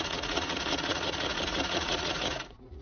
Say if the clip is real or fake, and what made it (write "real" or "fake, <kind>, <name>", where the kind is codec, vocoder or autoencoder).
fake, vocoder, Vocos